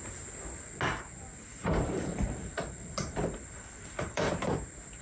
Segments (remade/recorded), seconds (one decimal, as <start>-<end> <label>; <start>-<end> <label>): 0.0-1.5 recorded; 1.5-4.3 remade; 4.3-5.0 recorded